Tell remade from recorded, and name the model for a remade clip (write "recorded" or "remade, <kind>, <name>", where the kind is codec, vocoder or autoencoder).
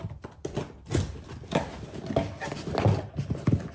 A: recorded